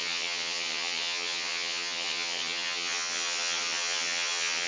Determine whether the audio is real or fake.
fake